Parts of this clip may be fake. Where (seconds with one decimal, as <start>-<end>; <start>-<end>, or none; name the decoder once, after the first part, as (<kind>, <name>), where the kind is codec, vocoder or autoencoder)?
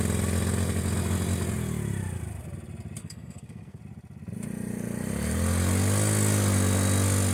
3.0-3.8 (codec, SNAC)